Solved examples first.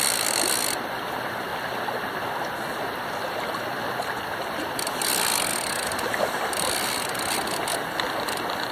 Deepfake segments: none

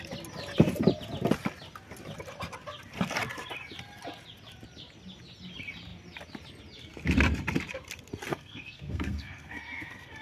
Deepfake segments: 8.3-10.2 (codec, SNAC)

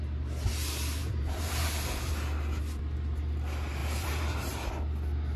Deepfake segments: 1.0-2.1 (vocoder, BigVGAN v2); 3.8-4.7

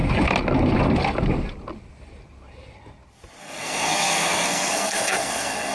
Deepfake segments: 3.4-5.7 (codec, SNAC)